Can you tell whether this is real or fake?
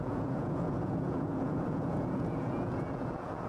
fake